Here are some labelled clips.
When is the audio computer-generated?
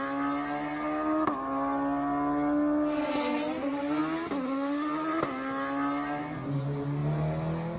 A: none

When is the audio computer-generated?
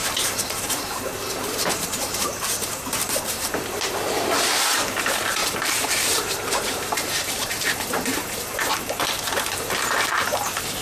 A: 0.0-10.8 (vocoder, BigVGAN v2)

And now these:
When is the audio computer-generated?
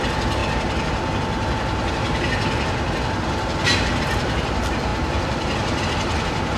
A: none